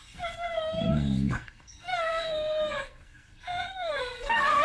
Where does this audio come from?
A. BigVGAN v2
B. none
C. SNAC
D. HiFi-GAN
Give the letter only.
C